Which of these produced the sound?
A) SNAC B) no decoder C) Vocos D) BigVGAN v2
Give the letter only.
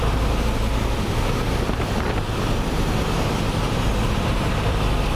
D